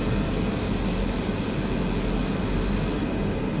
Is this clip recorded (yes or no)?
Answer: yes